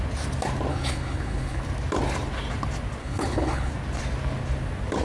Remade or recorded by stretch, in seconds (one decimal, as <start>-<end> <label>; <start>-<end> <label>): 0.0-0.7 recorded; 0.7-1.6 remade; 1.6-3.0 recorded; 3.0-3.7 remade; 3.7-5.0 recorded

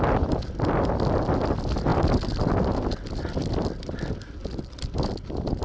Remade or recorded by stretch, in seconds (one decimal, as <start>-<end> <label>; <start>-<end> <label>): 0.0-5.6 recorded

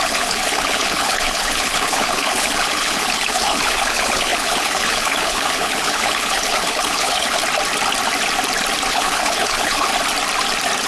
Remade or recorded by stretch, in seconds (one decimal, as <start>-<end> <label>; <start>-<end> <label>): 0.0-7.4 remade; 7.4-8.9 recorded; 8.9-9.9 remade; 9.9-10.9 recorded